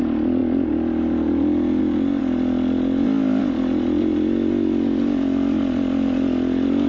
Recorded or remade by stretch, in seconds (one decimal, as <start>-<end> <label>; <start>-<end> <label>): 0.0-6.9 recorded